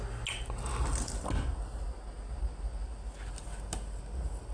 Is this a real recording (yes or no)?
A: yes